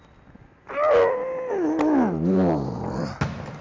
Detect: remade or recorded recorded